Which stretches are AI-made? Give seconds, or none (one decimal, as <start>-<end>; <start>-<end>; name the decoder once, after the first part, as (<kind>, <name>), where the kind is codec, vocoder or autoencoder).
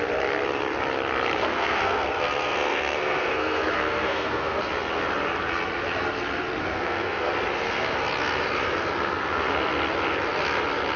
1.4-4.6 (codec, SNAC); 6.6-7.3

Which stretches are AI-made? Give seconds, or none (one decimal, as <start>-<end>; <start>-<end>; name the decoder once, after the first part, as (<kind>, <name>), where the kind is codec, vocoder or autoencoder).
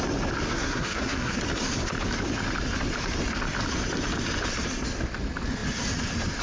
0.5-1.4 (codec, SNAC)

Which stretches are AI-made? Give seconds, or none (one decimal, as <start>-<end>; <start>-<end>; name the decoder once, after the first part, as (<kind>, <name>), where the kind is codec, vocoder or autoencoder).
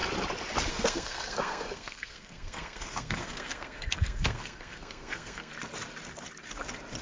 0.7-5.5 (codec, SNAC)